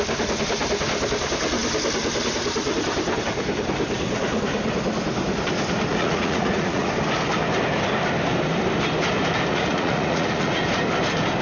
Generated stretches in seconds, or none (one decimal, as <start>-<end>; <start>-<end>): 5.9-6.9; 9.5-10.6